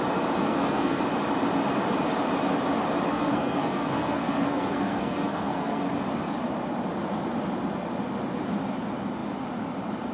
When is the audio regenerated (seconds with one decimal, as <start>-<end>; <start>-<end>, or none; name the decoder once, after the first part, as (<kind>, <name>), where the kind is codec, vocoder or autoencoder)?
0.4-1.0 (codec, SNAC); 3.1-5.9